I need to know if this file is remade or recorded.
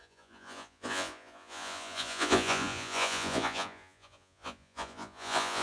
remade